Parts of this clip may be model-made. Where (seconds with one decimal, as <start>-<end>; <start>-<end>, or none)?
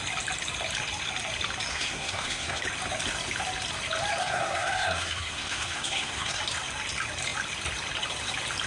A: 1.7-2.6; 4.2-6.4